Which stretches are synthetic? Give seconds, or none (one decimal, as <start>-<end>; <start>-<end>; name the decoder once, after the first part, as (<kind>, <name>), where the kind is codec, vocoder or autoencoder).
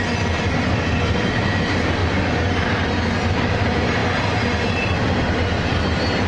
none